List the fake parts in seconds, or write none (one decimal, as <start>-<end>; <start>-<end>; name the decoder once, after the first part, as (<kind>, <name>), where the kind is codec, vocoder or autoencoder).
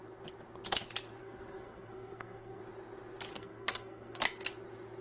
1.2-2.6 (codec, SNAC); 3.3-4.2